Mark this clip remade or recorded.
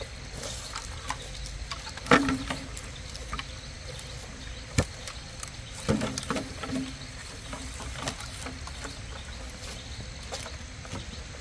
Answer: recorded